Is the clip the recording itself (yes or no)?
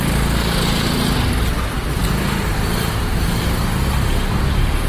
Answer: yes